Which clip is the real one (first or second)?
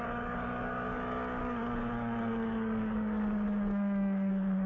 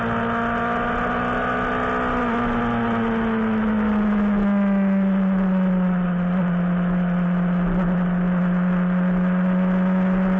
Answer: second